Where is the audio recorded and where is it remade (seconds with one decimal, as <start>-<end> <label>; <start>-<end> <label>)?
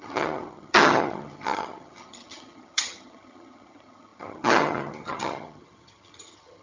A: 0.0-6.6 remade